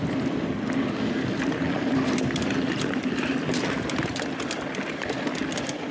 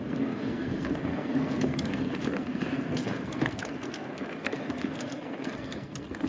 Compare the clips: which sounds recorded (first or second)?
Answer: first